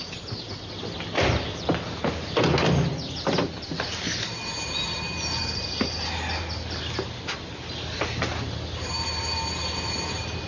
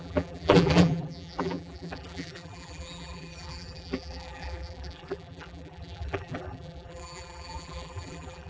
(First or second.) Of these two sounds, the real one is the first